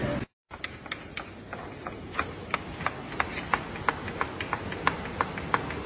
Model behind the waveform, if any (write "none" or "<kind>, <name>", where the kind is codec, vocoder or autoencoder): none